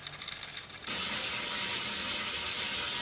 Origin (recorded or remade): recorded